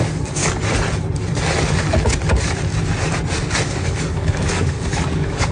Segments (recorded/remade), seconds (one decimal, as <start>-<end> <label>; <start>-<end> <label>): 0.0-0.4 remade; 0.4-3.7 recorded; 3.7-5.5 remade